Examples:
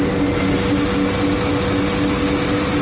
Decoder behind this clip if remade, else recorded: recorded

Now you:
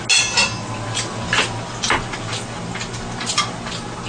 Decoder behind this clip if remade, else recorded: recorded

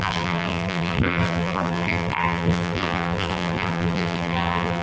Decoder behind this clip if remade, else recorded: remade, vocoder, BigVGAN v2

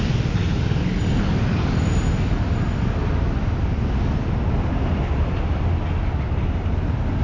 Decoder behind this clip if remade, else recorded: recorded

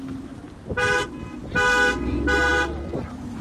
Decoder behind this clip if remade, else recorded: recorded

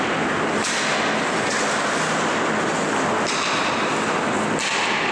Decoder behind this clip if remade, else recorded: recorded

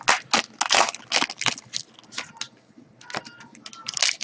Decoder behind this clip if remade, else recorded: recorded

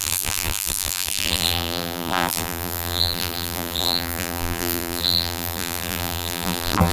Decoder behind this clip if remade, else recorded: remade, vocoder, BigVGAN v2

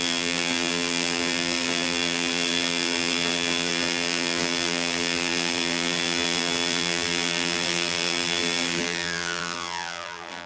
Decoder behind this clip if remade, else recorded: remade, vocoder, BigVGAN v2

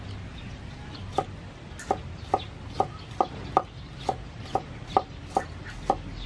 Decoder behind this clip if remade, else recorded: recorded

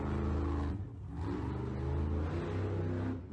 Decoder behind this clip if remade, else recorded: recorded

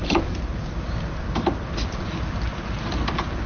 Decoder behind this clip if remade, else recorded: remade, vocoder, BigVGAN v2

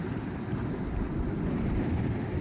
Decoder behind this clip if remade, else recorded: remade, vocoder, BigVGAN v2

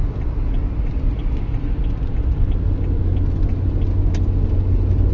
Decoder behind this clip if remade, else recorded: recorded